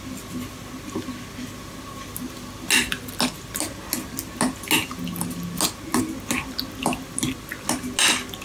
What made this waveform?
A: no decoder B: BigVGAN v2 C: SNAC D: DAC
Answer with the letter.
A